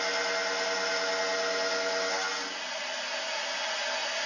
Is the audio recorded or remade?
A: recorded